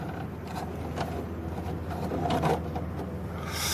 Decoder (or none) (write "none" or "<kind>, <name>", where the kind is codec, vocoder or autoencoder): none